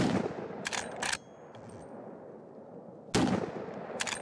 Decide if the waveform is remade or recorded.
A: recorded